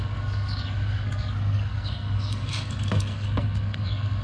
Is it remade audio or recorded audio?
remade